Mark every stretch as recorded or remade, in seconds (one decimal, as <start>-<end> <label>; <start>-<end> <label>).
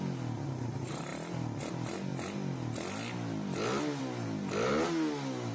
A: 0.0-5.5 recorded